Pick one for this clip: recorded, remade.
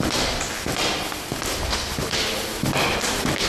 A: recorded